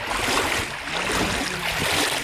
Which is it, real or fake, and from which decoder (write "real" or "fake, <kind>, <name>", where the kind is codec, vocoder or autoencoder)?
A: real